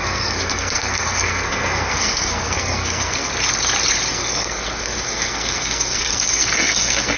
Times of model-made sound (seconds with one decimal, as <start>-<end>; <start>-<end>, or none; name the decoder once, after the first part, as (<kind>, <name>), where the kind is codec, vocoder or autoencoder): 0.0-3.3 (codec, SNAC); 4.1-7.2